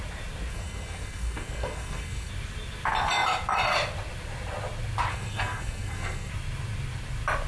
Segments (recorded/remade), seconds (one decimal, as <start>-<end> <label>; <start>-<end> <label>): 0.0-0.5 recorded; 0.5-2.3 remade; 2.3-5.1 recorded; 5.1-6.3 remade; 6.3-7.5 recorded